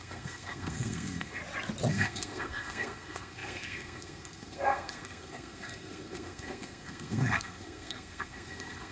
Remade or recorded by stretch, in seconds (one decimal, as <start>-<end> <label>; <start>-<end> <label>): 0.0-1.4 remade; 1.4-1.9 recorded; 1.9-8.9 remade